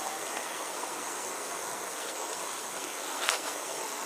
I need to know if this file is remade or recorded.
remade